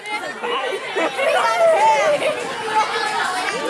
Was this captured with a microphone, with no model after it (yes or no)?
yes